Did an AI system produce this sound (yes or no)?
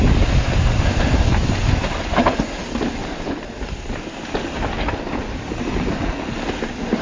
no